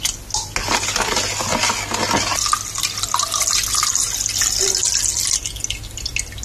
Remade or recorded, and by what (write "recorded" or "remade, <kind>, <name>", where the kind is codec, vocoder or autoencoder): recorded